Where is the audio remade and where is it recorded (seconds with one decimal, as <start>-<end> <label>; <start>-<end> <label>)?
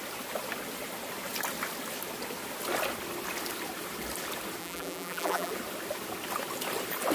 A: 0.0-4.6 recorded; 4.6-5.5 remade; 5.5-7.1 recorded